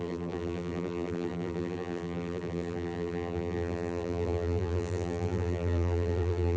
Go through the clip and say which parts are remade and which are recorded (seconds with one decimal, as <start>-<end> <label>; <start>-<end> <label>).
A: 0.0-6.6 remade